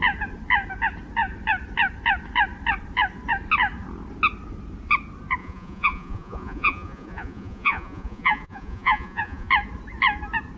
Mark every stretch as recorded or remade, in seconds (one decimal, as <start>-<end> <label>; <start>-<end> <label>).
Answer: 0.0-5.4 recorded; 5.4-9.5 remade; 9.5-10.6 recorded